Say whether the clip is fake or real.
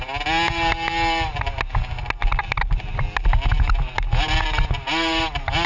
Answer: real